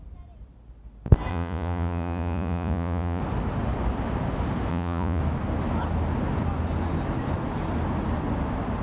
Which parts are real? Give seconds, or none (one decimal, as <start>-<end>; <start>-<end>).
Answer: 0.0-1.3; 3.2-4.7; 5.2-8.8